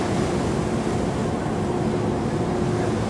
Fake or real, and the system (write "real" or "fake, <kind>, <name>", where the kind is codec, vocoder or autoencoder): real